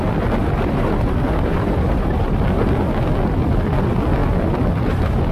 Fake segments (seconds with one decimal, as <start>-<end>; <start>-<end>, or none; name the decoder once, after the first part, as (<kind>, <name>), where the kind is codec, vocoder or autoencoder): 0.4-2.4 (vocoder, BigVGAN v2)